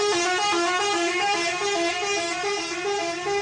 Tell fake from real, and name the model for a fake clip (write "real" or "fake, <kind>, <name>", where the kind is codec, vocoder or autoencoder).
real